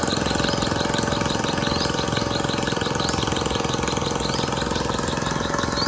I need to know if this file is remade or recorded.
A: recorded